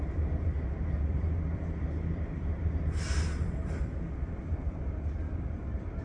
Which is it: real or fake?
fake